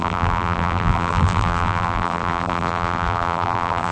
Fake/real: fake